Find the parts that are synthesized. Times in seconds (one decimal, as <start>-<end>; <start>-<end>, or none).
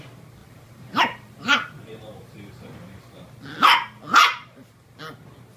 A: 0.4-3.2; 4.2-4.7